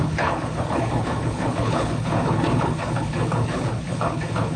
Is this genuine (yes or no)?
no